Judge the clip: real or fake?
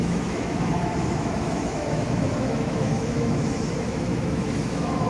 fake